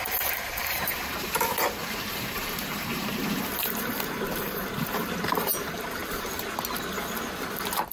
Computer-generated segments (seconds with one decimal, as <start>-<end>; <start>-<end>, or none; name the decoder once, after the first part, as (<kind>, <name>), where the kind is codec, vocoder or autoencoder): 0.0-6.0 (vocoder, BigVGAN v2)